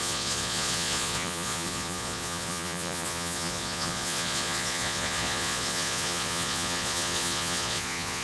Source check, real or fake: fake